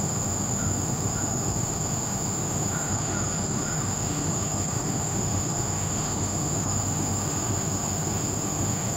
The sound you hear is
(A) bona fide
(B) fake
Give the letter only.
B